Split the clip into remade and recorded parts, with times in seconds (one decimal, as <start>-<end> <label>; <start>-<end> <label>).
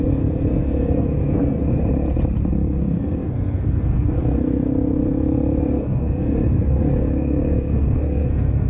0.0-1.6 remade; 1.6-2.5 recorded; 2.5-5.0 remade; 5.0-5.6 recorded; 5.6-8.7 remade